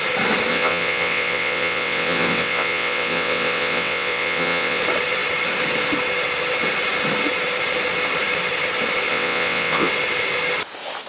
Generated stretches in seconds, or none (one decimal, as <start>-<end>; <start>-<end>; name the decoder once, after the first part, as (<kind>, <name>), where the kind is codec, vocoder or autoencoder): 0.5-4.8 (vocoder, WaveNeXt); 9.1-9.9